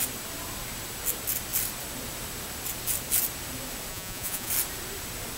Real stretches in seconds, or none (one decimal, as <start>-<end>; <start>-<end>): 0.0-3.9; 4.5-5.4